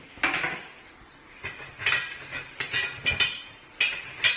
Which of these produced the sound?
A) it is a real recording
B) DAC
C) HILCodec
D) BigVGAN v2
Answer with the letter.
A